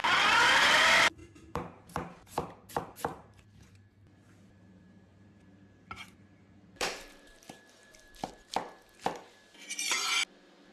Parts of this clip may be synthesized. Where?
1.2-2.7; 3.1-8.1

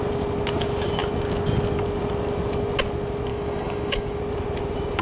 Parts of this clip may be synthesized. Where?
3.3-4.2

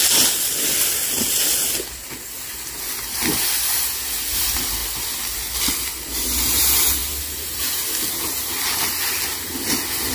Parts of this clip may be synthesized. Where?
none

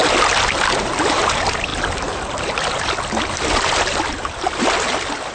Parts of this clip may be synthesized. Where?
0.0-5.3